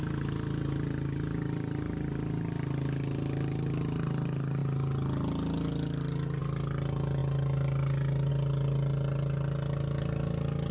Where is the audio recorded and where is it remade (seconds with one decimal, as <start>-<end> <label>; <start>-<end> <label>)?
0.0-10.7 recorded